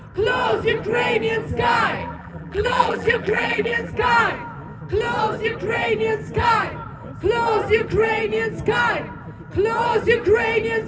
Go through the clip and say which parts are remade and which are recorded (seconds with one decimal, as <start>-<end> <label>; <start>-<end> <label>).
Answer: 0.0-2.0 recorded; 2.0-3.9 remade; 3.9-10.9 recorded